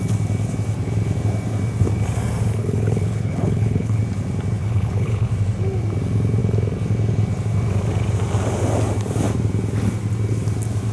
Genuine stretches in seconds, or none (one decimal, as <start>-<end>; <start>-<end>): 0.0-2.6; 4.0-4.6; 5.3-10.9